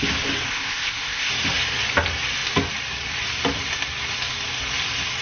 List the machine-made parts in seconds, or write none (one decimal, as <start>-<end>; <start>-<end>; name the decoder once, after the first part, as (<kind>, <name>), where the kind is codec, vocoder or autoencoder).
0.5-1.3 (codec, ZipCodec)